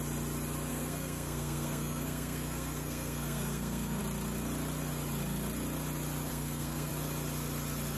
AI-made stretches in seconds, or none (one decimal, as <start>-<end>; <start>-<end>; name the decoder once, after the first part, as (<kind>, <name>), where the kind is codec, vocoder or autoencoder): 0.7-4.0 (codec, SNAC); 6.3-6.9